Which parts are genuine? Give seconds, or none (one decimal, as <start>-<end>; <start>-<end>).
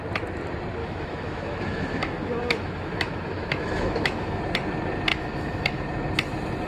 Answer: 0.0-0.8; 4.4-5.1; 5.8-6.7